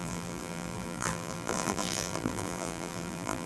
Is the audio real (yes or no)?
no